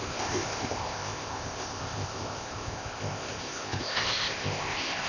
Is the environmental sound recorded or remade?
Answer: remade